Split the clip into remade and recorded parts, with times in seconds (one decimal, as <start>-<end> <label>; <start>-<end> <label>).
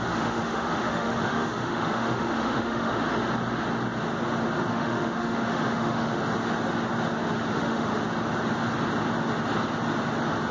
0.0-2.9 remade; 2.9-4.7 recorded; 4.7-6.2 remade; 6.2-7.5 recorded; 7.5-7.9 remade; 7.9-10.5 recorded